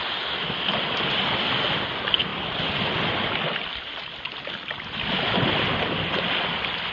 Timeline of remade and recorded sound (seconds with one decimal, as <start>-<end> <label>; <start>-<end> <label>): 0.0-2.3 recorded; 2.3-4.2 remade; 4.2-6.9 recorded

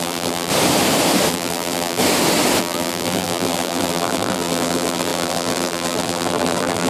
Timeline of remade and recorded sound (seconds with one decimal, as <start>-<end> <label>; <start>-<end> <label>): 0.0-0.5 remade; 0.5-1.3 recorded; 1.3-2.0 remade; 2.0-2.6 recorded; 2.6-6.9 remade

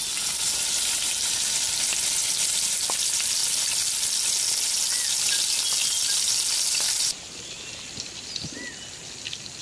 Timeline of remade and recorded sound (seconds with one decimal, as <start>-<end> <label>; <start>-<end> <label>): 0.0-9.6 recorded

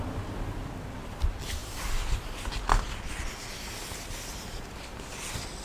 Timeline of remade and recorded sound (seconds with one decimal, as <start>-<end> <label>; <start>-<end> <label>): 0.0-5.6 recorded

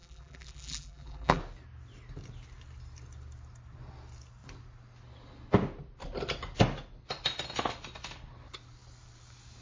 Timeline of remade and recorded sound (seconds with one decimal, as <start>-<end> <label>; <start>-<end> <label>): 0.0-1.4 remade; 1.4-9.6 recorded